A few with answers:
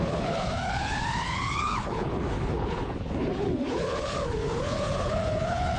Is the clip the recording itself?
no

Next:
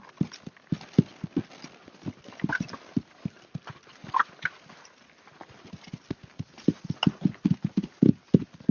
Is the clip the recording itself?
yes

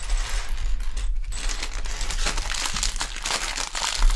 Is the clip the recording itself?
yes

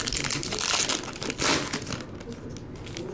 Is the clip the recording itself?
yes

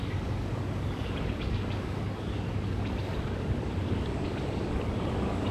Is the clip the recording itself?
no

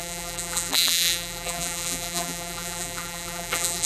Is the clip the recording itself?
no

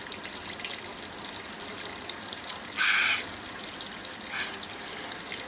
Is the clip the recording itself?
yes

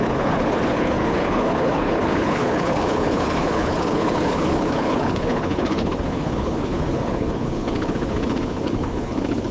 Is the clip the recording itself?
no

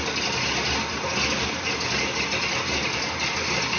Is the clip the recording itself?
yes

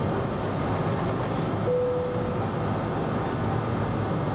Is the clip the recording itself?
yes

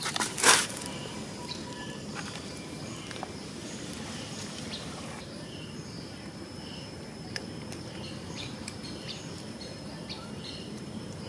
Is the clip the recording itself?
no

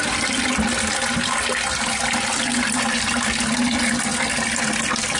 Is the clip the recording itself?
yes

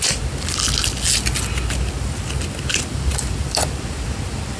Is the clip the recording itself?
yes